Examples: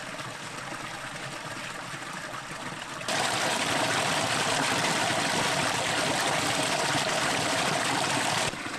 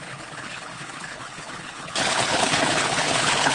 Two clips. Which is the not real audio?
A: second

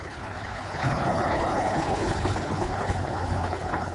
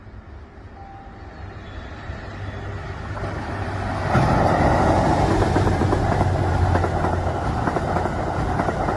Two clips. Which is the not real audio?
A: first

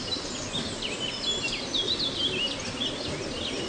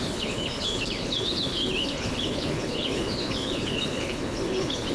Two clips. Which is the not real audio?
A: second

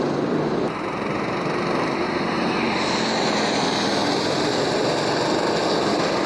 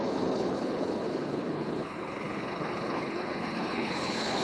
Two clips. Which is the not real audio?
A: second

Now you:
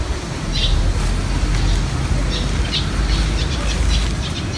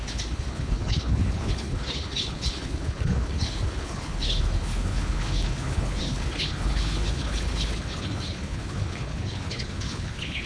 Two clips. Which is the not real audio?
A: second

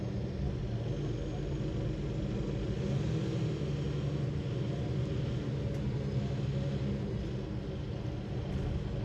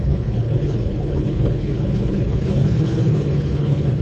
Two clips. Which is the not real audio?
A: second